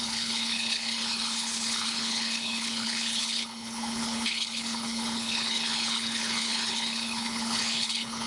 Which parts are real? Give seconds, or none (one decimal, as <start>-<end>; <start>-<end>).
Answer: none